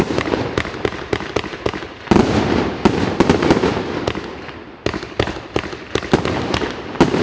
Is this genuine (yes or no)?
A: yes